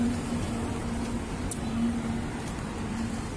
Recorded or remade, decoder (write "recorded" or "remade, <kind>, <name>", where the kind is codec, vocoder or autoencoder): recorded